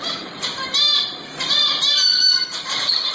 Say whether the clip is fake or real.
fake